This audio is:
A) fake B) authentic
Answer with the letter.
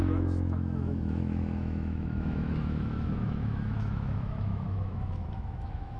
A